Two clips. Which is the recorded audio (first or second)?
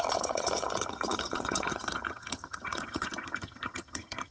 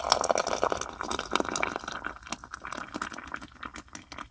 second